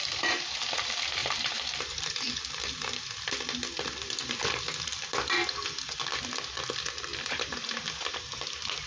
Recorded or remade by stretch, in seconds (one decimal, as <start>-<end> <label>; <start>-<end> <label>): 0.0-1.2 recorded; 1.2-2.1 remade; 2.1-8.9 recorded